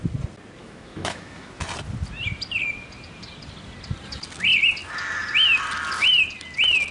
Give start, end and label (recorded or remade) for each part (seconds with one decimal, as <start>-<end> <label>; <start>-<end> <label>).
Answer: 0.0-0.6 recorded; 0.6-1.6 remade; 1.6-6.9 recorded